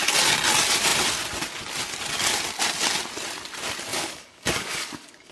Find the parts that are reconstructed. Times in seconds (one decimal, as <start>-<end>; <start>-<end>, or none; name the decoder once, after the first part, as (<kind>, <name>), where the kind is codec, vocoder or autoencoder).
3.9-5.3 (codec, DAC)